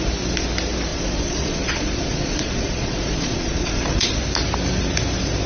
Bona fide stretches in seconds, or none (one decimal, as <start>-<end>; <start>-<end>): 0.0-0.9; 4.2-5.5